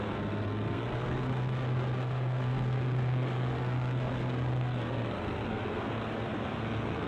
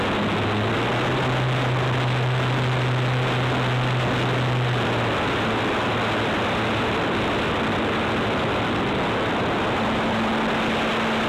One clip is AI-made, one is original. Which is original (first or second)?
second